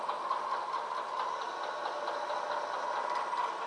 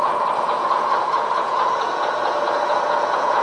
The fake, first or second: second